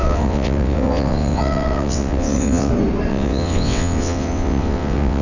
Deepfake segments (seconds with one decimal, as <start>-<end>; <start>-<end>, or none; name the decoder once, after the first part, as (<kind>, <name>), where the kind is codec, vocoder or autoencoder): 0.0-2.7 (vocoder, WaveNeXt); 3.1-5.2